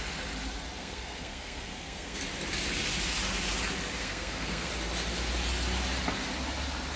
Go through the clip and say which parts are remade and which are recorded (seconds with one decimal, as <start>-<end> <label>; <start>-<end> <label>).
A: 0.0-0.8 recorded; 0.8-2.2 remade; 2.2-4.0 recorded; 4.0-4.7 remade; 4.7-7.0 recorded